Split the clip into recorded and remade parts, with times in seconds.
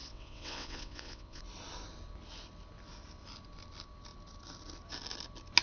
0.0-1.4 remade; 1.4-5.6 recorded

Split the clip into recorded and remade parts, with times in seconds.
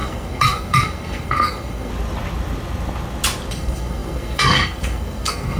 0.0-1.9 remade; 1.9-3.5 recorded; 3.5-5.6 remade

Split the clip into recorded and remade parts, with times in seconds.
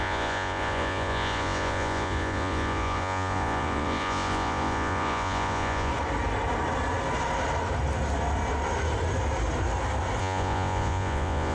0.0-5.9 remade; 5.9-10.2 recorded; 10.2-11.5 remade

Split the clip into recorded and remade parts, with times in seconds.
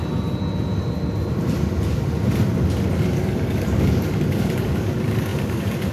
0.0-3.0 recorded; 3.0-5.9 remade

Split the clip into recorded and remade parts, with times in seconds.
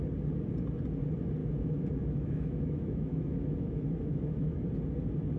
0.0-1.4 recorded; 1.4-4.6 remade; 4.6-5.4 recorded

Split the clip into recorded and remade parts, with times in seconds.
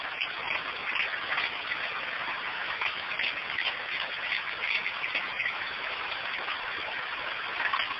0.0-2.5 recorded; 2.5-3.1 remade; 3.1-5.4 recorded; 5.4-6.2 remade; 6.2-8.0 recorded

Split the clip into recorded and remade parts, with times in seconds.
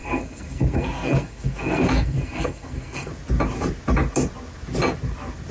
0.0-3.1 remade; 3.1-5.5 recorded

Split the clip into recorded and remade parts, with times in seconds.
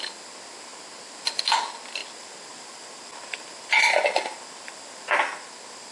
0.0-2.0 recorded; 2.0-5.5 remade; 5.5-5.9 recorded